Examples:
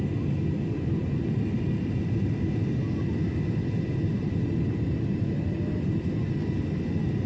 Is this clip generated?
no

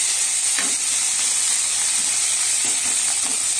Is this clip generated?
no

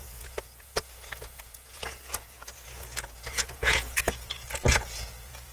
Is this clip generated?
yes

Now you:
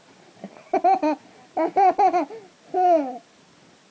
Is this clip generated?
no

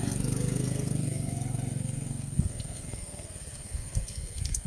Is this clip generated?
yes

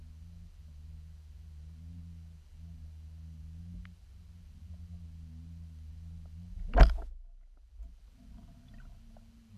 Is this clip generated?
no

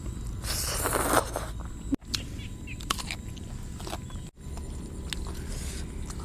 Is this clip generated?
no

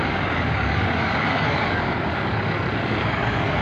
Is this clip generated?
yes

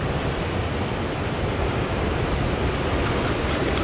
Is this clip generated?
no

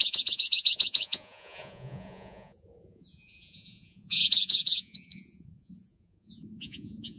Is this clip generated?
yes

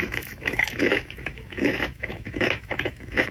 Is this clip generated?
yes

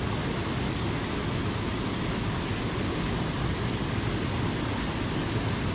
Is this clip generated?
no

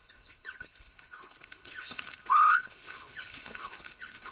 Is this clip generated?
yes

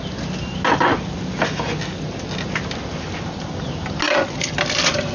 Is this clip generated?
no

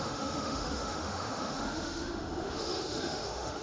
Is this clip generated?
yes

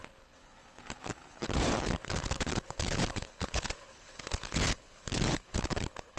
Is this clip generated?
yes